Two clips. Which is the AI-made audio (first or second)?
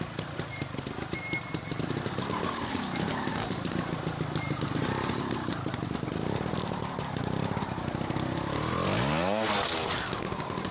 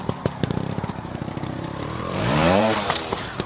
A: second